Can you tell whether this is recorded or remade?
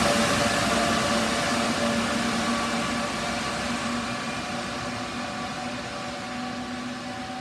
recorded